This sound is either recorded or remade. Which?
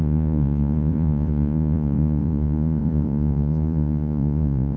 remade